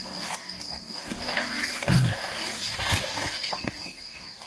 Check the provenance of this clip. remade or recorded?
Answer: remade